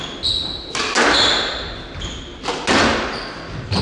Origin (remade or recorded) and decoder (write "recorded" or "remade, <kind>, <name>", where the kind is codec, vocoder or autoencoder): recorded